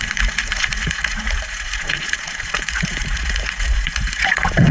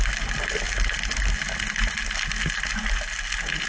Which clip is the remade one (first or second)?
first